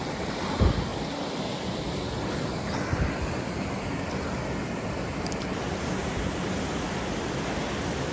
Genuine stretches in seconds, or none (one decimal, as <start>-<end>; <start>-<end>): 0.0-8.1